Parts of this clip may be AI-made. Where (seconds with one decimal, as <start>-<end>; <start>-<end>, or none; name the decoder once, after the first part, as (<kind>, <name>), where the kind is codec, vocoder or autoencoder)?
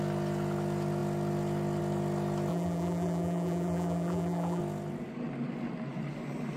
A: 2.5-4.6 (vocoder, BigVGAN v2)